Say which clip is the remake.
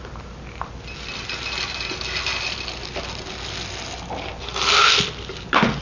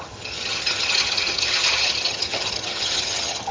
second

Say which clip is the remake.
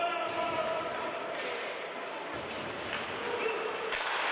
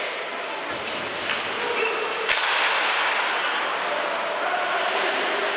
first